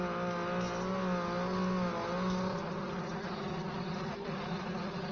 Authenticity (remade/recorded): recorded